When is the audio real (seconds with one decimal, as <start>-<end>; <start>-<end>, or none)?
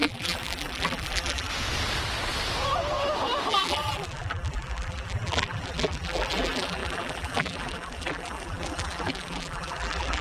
1.5-3.5